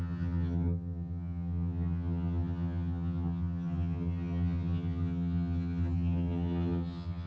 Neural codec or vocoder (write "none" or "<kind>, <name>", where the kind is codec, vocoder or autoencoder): vocoder, HiFi-GAN